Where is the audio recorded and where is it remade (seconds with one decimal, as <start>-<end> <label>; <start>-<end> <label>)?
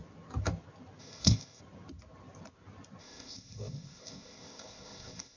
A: 0.0-1.0 recorded; 1.0-1.6 remade; 1.6-3.0 recorded; 3.0-5.4 remade